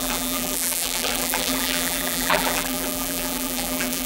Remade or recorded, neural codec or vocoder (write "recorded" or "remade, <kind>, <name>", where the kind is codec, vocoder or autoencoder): remade, vocoder, BigVGAN v2